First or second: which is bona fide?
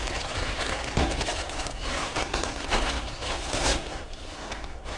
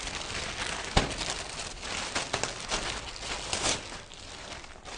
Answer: second